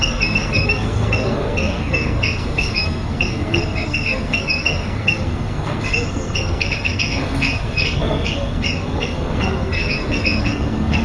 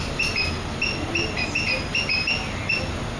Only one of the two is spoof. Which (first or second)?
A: first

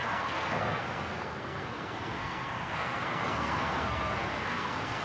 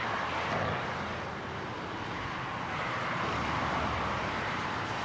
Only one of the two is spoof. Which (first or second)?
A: first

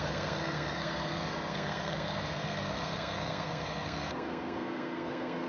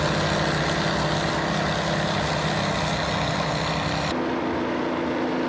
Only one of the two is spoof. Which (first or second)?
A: first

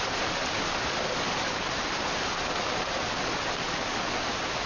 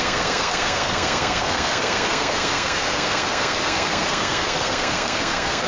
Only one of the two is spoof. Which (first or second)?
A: second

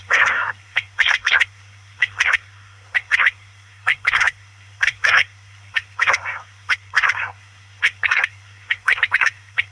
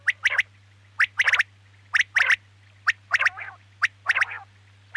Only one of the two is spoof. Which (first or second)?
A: first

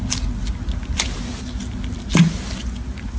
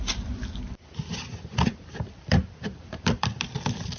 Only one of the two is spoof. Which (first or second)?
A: second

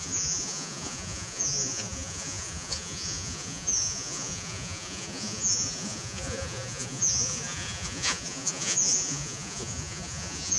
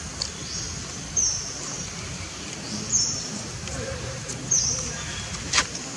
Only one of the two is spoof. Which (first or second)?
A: first